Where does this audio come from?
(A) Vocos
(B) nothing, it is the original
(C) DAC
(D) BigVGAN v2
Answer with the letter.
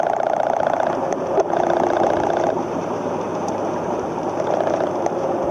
D